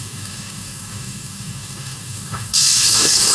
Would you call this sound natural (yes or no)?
no